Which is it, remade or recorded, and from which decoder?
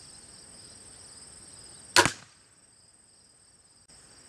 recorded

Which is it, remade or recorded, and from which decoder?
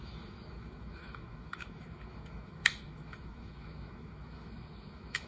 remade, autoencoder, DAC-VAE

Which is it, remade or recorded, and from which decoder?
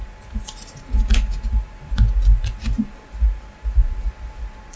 recorded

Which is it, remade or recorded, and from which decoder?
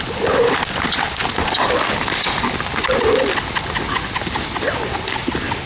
recorded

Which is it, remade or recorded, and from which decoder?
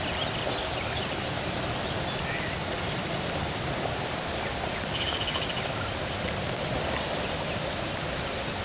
recorded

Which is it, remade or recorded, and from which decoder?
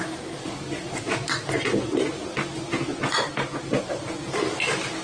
recorded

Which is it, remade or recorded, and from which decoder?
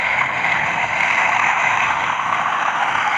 remade, autoencoder, DAC-VAE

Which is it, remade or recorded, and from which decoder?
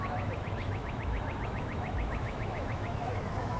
remade, autoencoder, DAC-VAE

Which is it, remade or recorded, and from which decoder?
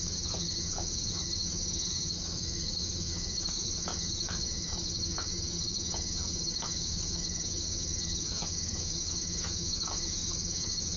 remade, autoencoder, DAC-VAE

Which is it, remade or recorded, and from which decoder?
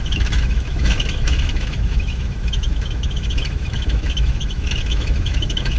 remade, autoencoder, DAC-VAE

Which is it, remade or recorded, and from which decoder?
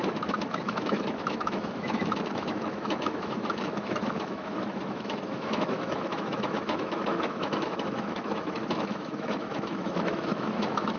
remade, autoencoder, DAC-VAE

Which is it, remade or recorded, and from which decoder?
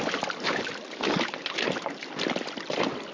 recorded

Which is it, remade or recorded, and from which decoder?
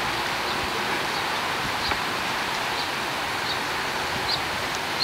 recorded